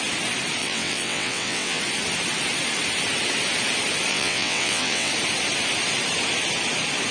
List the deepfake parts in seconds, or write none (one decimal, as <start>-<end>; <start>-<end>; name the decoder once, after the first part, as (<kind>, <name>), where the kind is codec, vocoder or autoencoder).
0.6-1.8 (vocoder, WaveNeXt); 4.1-5.1